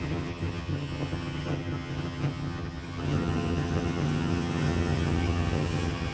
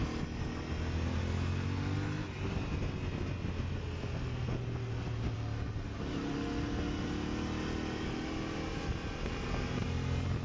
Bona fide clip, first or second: second